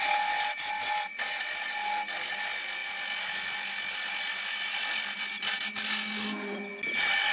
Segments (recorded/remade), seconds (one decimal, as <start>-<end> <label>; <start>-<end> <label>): 0.0-7.3 recorded